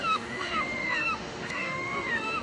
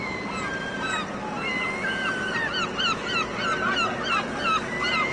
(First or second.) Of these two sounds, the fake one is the first